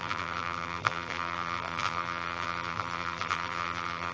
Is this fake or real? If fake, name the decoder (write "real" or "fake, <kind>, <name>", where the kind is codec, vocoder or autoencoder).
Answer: fake, vocoder, BigVGAN v2